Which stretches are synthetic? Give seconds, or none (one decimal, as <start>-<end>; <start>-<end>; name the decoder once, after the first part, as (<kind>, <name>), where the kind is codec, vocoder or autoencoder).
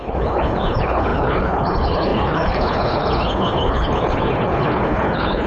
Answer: 0.0-5.5 (codec, HILCodec)